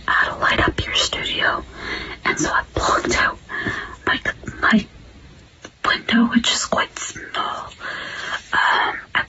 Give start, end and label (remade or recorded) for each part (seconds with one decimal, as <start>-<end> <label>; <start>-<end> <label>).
0.0-1.3 recorded; 1.3-4.3 remade; 4.3-9.3 recorded